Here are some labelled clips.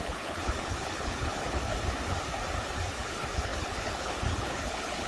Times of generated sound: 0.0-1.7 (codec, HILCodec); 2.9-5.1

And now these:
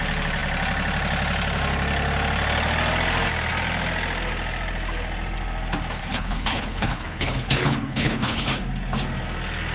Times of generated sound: 6.0-8.6 (codec, HILCodec)